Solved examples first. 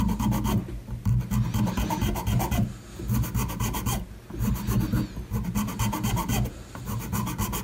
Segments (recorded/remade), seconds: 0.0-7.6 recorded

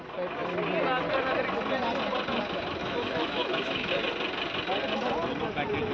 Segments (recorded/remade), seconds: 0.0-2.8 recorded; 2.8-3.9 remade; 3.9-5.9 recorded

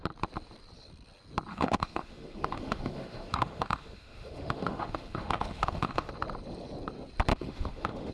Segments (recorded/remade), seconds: 0.0-1.5 recorded; 1.5-6.1 remade; 6.1-7.3 recorded; 7.3-8.1 remade

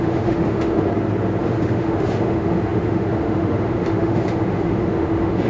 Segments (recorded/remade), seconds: 0.0-0.9 remade; 0.9-1.4 recorded; 1.4-5.5 remade

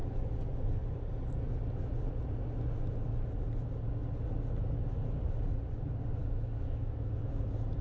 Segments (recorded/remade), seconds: 0.0-6.2 recorded; 6.2-7.3 remade; 7.3-7.8 recorded

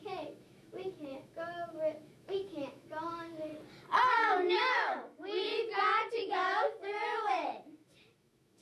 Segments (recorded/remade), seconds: 0.0-3.5 remade; 3.5-4.1 recorded; 4.1-5.5 remade; 5.5-6.1 recorded; 6.1-8.6 remade

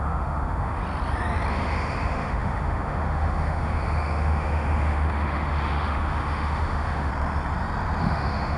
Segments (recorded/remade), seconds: 0.0-0.8 remade; 0.8-1.5 recorded; 1.5-7.1 remade; 7.1-8.0 recorded; 8.0-8.6 remade